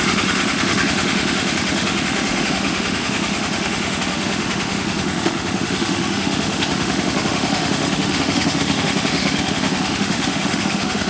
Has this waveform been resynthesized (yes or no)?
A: yes